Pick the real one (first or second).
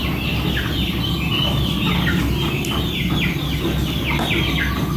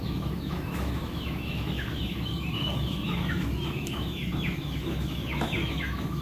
first